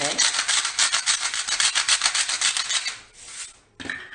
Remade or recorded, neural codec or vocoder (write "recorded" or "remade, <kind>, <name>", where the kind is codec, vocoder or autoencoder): recorded